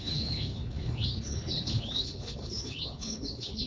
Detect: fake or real fake